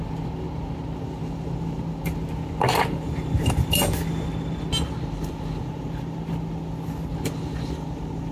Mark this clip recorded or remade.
recorded